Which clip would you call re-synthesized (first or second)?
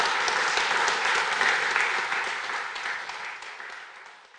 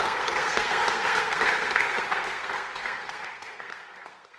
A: second